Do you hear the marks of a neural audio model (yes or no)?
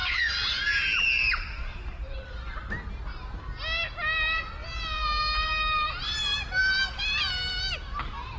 no